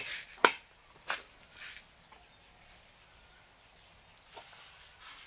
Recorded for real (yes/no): yes